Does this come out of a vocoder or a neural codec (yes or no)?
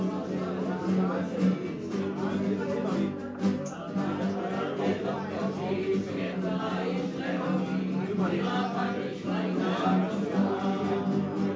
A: no